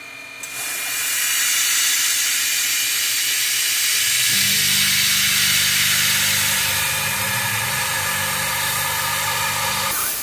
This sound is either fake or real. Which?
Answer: real